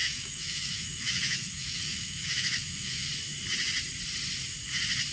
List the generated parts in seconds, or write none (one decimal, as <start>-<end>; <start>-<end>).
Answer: 0.0-3.1